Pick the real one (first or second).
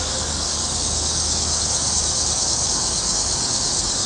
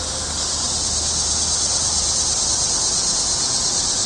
second